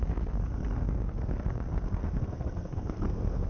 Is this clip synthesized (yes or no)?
yes